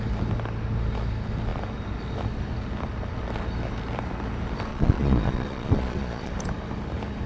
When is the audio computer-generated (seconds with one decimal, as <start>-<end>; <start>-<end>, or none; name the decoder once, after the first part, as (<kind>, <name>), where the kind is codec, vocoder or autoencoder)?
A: 4.7-6.3 (vocoder, Vocos)